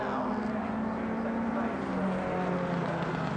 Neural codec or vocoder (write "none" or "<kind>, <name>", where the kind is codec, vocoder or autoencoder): none